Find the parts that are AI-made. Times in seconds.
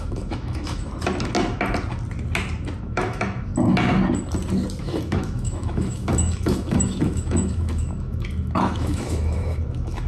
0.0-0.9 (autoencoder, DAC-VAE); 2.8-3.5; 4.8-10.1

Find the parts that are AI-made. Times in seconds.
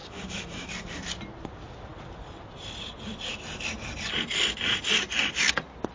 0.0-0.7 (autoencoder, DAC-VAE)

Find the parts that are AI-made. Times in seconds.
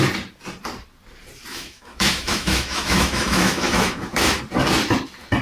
1.5-4.4 (autoencoder, DAC-VAE)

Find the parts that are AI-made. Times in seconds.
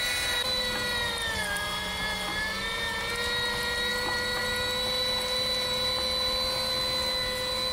none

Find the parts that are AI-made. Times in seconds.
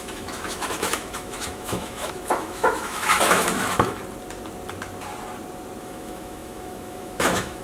0.0-4.0 (autoencoder, DAC-VAE); 5.8-7.6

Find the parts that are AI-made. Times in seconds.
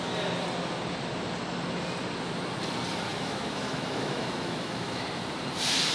3.1-5.0 (autoencoder, DAC-VAE)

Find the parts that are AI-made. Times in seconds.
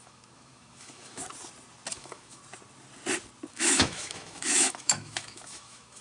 0.0-1.2 (autoencoder, DAC-VAE); 1.9-2.4; 3.5-6.0